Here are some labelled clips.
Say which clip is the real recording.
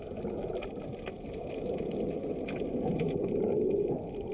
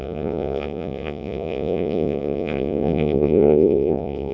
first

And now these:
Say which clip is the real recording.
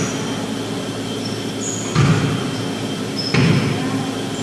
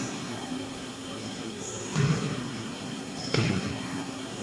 first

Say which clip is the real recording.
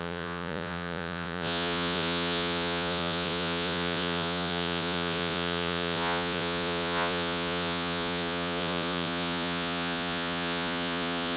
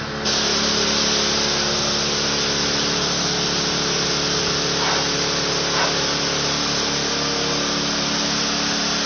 second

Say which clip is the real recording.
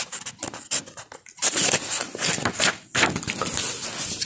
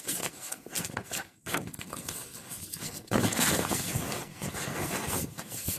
first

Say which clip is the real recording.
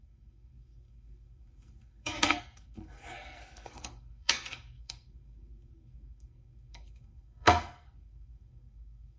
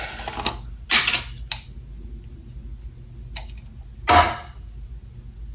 second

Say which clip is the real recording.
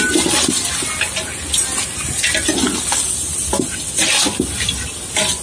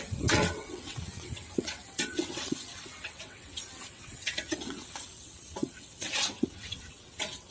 first